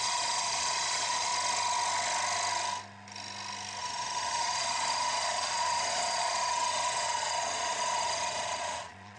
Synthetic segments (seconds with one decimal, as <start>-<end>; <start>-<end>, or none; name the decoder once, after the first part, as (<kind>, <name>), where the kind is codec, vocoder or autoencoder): 0.0-1.3 (vocoder, Vocos); 3.8-9.2